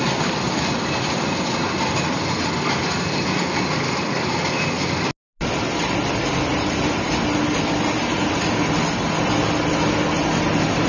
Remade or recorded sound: recorded